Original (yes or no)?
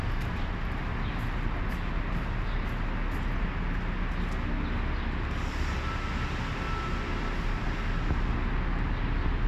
yes